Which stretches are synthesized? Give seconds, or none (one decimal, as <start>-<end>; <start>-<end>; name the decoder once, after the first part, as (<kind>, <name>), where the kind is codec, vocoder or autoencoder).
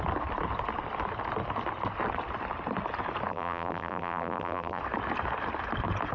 3.3-4.8 (vocoder, BigVGAN v2)